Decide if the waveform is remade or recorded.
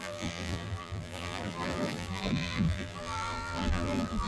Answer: remade